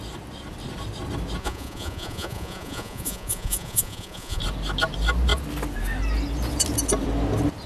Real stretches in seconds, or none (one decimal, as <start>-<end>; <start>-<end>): 0.0-1.4; 4.4-7.7